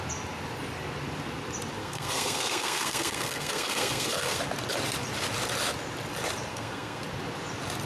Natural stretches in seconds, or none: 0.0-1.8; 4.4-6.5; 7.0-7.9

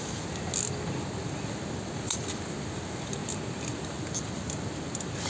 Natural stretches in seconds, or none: 0.0-5.3

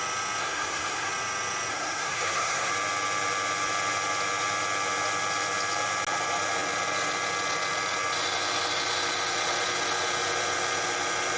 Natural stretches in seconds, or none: 0.0-0.4; 1.1-1.7; 2.7-11.4

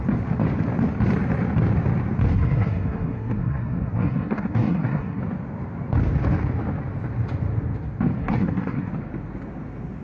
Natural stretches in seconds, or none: 0.0-2.3; 5.2-8.2; 8.9-10.0

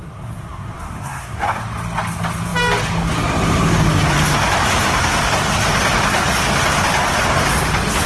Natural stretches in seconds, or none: 1.6-8.1

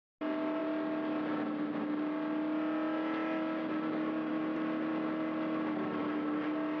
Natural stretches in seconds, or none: 0.0-6.8

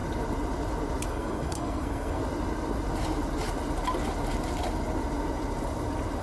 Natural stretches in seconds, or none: 0.0-1.1; 2.2-6.2

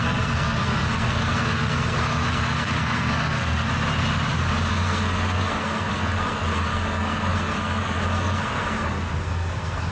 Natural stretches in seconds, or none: 3.7-4.7